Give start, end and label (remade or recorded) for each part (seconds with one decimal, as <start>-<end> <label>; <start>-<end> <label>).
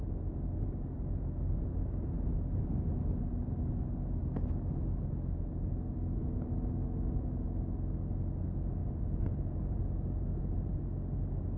0.0-8.8 recorded; 8.8-9.8 remade; 9.8-11.6 recorded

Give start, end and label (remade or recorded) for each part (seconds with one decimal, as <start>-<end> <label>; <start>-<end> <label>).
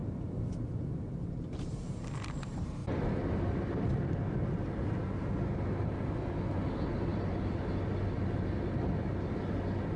0.0-2.8 recorded; 2.8-4.9 remade; 4.9-7.1 recorded; 7.1-7.6 remade; 7.6-10.0 recorded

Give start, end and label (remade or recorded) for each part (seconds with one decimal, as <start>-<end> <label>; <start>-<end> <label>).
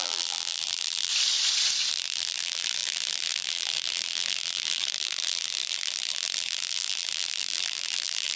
0.0-1.1 remade; 1.1-1.9 recorded; 1.9-8.4 remade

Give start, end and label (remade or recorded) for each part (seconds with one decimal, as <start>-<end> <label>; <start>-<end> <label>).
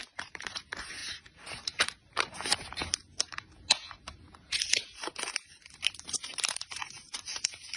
0.0-7.8 remade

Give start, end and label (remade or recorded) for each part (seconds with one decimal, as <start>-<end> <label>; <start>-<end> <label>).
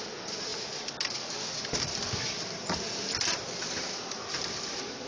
0.0-0.5 remade; 0.5-3.6 recorded; 3.6-5.1 remade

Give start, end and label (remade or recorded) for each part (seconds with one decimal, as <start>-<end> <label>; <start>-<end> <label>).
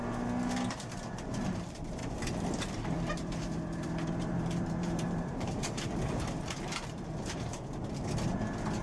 0.0-0.7 recorded; 0.7-2.0 remade; 2.0-2.6 recorded; 2.6-7.5 remade; 7.5-8.8 recorded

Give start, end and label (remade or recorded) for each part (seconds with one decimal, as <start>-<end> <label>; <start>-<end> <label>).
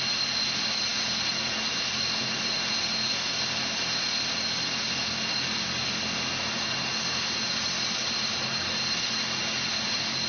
0.0-10.3 recorded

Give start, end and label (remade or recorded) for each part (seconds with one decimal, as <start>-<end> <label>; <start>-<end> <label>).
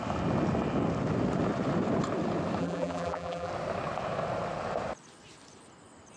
0.0-2.6 recorded; 2.6-3.5 remade; 3.5-6.2 recorded